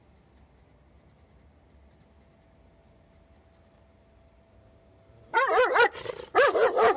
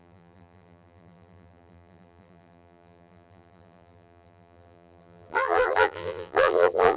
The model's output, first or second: second